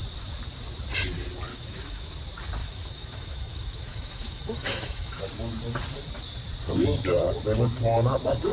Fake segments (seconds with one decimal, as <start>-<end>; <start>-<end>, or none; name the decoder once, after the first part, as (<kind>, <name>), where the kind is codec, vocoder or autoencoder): 1.5-2.1 (autoencoder, DAC-VAE); 2.6-5.2